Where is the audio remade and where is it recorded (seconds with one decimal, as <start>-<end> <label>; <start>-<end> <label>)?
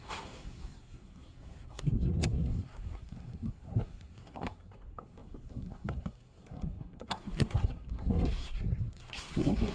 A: 0.0-9.7 remade